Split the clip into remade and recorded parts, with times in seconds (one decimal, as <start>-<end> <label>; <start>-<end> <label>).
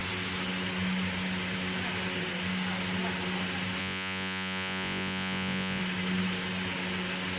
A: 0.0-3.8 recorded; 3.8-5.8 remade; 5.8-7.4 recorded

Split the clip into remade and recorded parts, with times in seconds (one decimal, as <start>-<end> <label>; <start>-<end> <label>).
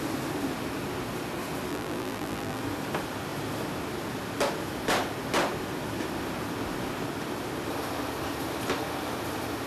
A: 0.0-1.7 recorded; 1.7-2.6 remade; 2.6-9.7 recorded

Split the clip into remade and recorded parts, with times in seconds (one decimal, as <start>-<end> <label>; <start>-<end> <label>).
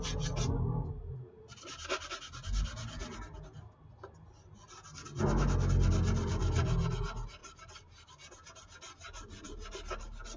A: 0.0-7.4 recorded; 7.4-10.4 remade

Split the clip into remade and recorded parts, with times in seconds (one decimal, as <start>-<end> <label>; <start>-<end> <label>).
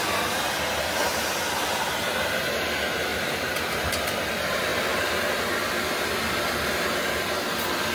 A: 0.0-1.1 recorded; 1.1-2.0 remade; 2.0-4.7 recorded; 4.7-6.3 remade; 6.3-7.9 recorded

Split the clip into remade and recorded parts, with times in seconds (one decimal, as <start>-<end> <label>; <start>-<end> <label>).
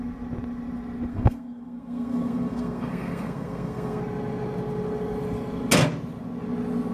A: 0.0-1.1 recorded; 1.1-4.0 remade; 4.0-6.9 recorded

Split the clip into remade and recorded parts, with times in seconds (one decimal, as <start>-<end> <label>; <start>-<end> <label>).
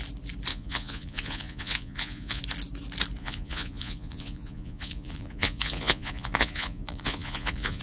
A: 0.0-0.5 recorded; 0.5-2.4 remade; 2.4-3.2 recorded; 3.2-7.8 remade